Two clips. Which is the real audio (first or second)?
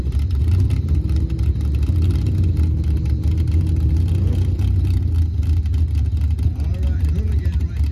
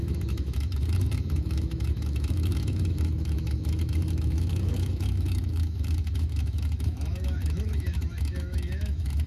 first